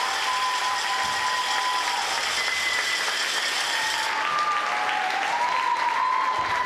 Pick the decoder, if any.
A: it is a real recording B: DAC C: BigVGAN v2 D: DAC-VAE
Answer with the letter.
A